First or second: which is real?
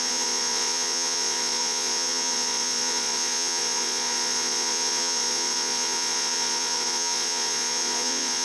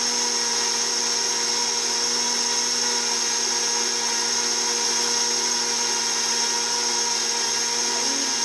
second